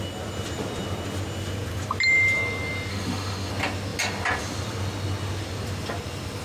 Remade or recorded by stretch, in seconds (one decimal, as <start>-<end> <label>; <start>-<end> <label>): 0.0-2.9 recorded; 2.9-3.5 remade; 3.5-6.4 recorded